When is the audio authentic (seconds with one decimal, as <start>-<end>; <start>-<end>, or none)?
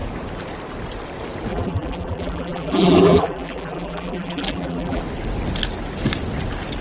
0.0-1.5; 5.0-6.8